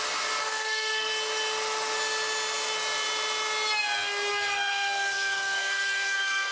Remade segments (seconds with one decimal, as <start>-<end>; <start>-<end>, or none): 0.4-1.1; 4.3-6.5